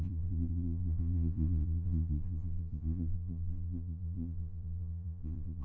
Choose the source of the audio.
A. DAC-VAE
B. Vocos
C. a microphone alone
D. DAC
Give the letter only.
B